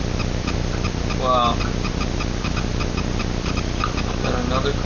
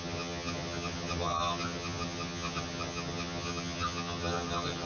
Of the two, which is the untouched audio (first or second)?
first